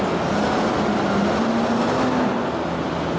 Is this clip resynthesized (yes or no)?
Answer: no